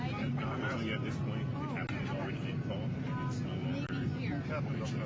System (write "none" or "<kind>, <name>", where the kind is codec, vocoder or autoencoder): none